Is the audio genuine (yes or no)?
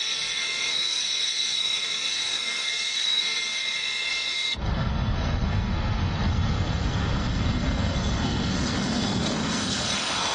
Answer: no